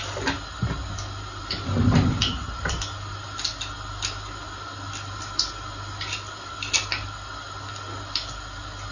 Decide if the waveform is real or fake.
real